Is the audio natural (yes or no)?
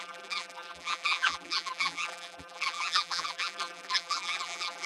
no